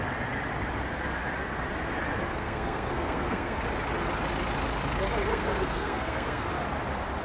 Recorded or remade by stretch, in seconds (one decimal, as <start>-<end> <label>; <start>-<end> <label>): 0.0-2.4 recorded; 2.4-3.6 remade; 3.6-5.3 recorded; 5.3-6.5 remade; 6.5-7.2 recorded